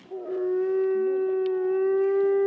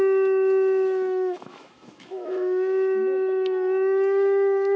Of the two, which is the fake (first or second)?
second